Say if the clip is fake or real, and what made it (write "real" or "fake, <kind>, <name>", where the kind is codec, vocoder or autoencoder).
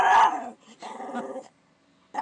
real